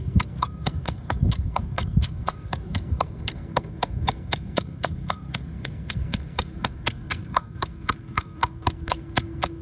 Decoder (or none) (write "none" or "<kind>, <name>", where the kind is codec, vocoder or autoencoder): codec, SNAC